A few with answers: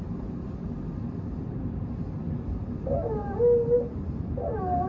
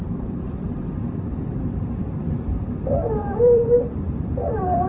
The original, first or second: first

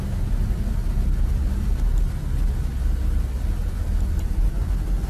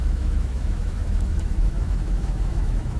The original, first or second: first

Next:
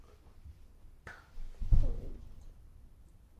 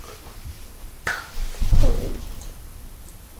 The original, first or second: first